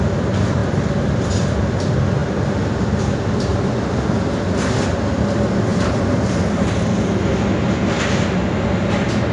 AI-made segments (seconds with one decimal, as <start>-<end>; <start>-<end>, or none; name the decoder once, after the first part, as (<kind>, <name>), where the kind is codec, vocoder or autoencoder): none